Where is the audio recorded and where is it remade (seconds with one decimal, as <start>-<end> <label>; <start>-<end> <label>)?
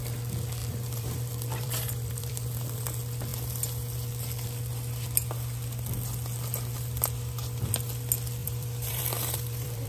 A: 0.0-0.6 recorded; 0.6-2.3 remade; 2.3-8.4 recorded; 8.4-9.9 remade